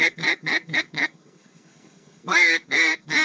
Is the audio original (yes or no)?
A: no